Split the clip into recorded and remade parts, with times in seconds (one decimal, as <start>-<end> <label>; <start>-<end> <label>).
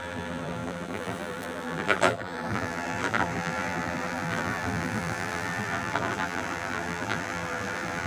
0.0-8.1 remade